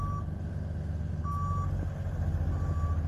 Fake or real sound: real